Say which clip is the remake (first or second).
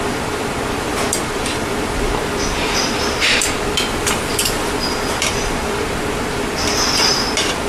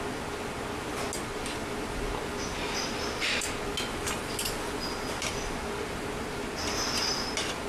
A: first